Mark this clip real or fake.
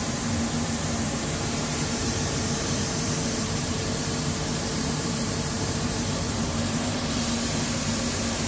fake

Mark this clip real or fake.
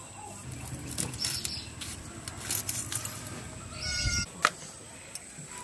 real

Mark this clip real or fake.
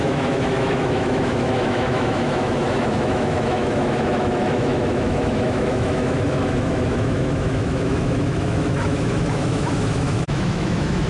fake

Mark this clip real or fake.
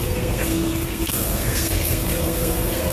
fake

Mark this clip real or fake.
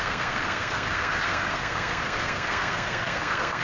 fake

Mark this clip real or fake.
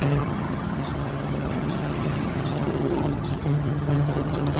fake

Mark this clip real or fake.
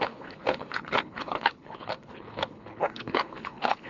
fake